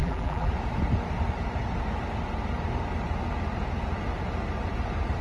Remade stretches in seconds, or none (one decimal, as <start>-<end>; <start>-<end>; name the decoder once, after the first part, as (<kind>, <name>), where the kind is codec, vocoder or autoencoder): 0.0-0.5 (vocoder, BigVGAN v2)